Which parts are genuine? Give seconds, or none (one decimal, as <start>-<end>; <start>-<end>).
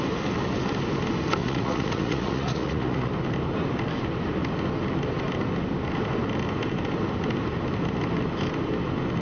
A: 0.0-1.4; 3.1-9.2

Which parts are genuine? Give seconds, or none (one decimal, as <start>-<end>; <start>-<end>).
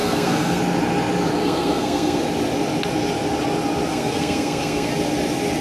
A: 0.6-1.4; 2.2-3.9; 4.9-5.6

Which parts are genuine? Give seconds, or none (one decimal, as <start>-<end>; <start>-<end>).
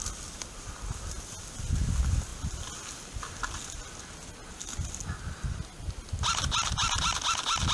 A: 0.0-7.7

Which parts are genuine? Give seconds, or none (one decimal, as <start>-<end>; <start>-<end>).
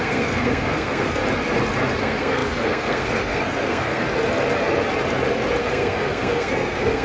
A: 1.2-2.0; 4.0-5.6